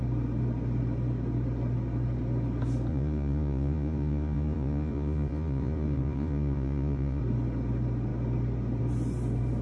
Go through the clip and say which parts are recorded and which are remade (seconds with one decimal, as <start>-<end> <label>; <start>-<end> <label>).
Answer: 0.0-2.9 recorded; 2.9-7.2 remade; 7.2-9.6 recorded